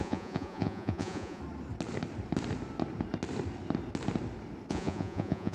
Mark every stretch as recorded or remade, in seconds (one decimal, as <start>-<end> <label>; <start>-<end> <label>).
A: 0.0-1.4 remade; 1.4-4.7 recorded; 4.7-5.5 remade